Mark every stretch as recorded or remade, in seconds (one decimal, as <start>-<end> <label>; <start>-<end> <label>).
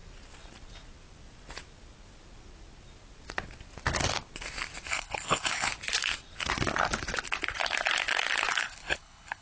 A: 0.0-4.9 recorded; 4.9-5.7 remade; 5.7-8.5 recorded; 8.5-9.4 remade